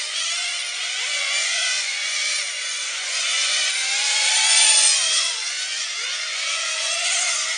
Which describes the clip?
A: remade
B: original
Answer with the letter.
A